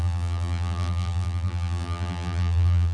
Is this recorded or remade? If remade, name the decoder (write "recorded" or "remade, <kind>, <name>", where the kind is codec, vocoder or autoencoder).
remade, vocoder, BigVGAN v2